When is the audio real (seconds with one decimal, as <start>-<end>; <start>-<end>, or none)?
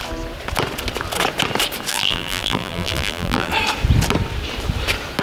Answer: 0.0-1.9; 3.5-5.2